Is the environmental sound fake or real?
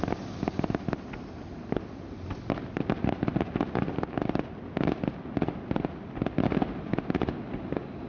real